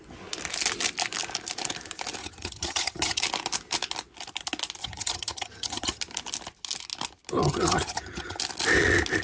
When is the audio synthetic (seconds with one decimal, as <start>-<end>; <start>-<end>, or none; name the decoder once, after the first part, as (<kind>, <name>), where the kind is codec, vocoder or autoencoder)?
2.2-3.2 (vocoder, HiFi-GAN); 4.8-6.0; 7.4-8.4

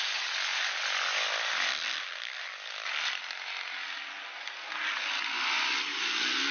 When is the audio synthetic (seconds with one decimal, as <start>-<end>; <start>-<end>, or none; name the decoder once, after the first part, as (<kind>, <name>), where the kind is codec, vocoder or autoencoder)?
none

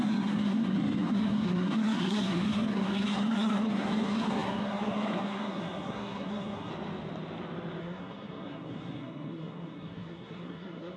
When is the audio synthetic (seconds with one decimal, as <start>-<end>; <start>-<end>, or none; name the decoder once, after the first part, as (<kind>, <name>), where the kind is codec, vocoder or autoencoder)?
0.0-6.7 (codec, SNAC); 7.8-11.0

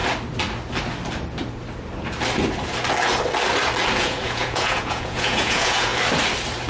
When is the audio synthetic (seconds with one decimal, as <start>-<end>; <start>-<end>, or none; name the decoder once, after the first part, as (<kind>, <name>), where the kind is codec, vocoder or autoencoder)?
4.0-5.9 (vocoder, Vocos)

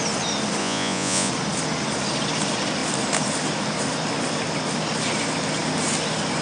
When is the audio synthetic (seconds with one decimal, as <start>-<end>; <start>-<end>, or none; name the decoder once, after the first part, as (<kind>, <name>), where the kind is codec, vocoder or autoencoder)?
0.6-1.3 (vocoder, Vocos)